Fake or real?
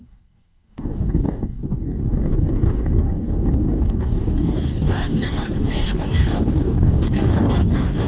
fake